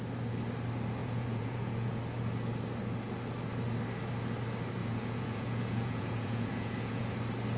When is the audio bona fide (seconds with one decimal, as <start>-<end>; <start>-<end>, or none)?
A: 0.0-1.0; 2.0-4.8; 7.1-7.6